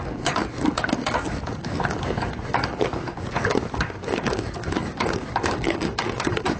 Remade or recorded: remade